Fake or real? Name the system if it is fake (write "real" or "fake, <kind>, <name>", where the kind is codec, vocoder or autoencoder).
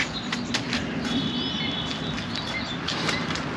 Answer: real